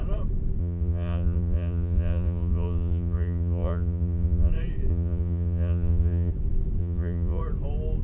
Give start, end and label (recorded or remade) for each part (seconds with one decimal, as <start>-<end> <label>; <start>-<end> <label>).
0.0-0.6 recorded; 0.6-4.5 remade; 4.5-4.9 recorded; 4.9-6.3 remade; 6.3-6.8 recorded; 6.8-7.4 remade; 7.4-8.0 recorded